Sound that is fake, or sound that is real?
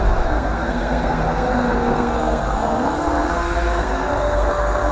fake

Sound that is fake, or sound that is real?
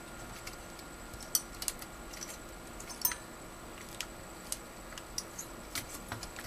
real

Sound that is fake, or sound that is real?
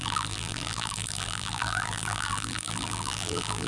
fake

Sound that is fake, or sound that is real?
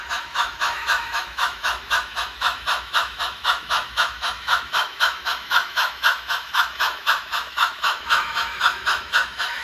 fake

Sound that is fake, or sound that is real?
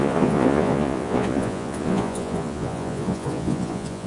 fake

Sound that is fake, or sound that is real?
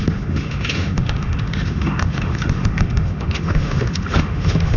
fake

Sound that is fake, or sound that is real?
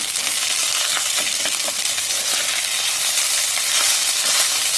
real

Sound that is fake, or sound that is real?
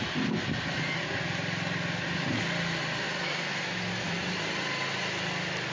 real